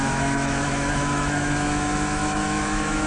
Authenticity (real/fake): fake